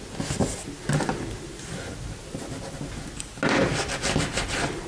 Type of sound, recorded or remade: recorded